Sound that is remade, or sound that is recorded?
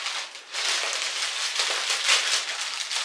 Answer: recorded